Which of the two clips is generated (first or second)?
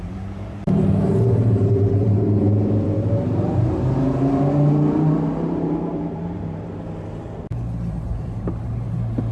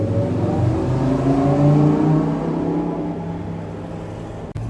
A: first